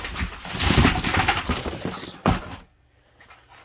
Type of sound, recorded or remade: recorded